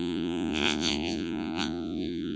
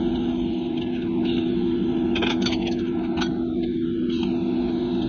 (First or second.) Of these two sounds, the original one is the second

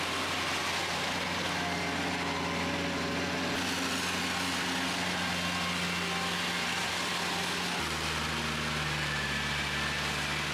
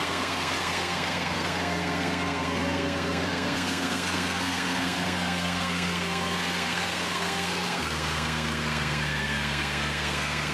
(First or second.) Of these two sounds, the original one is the first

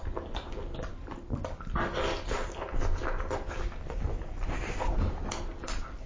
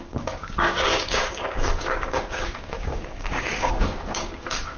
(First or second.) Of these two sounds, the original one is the first